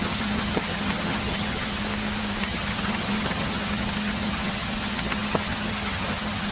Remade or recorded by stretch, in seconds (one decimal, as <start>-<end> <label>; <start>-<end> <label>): 0.0-1.8 remade; 1.8-2.4 recorded; 2.4-6.5 remade